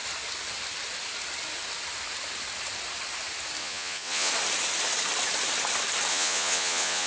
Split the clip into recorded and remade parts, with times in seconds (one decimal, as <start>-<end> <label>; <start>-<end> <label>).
0.0-3.6 recorded; 3.6-4.3 remade; 4.3-6.1 recorded; 6.1-7.1 remade